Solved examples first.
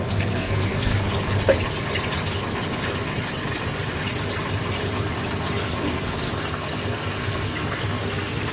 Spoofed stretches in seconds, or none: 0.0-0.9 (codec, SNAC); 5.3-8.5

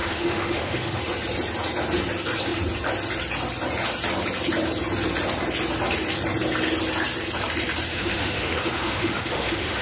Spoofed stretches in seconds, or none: 0.0-1.0 (autoencoder, DAC-VAE); 7.9-9.8

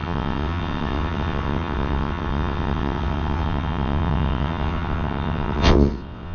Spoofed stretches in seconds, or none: 0.0-6.3 (vocoder, WaveNeXt)

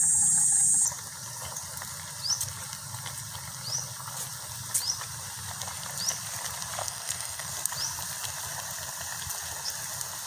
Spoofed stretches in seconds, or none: 6.8-7.5 (codec, SNAC)

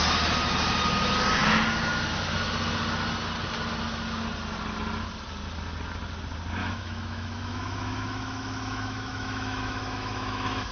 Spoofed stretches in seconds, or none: 6.6-10.7 (autoencoder, DAC-VAE)

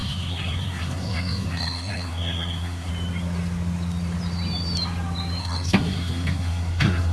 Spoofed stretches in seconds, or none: 0.0-2.9 (codec, SNAC); 5.4-7.1

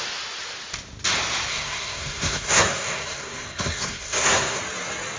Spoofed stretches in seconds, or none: 1.5-4.6 (codec, SNAC)

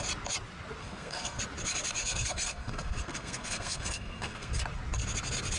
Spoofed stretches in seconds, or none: 0.8-1.4 (codec, SNAC); 2.0-4.5